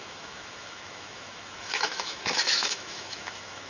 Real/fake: fake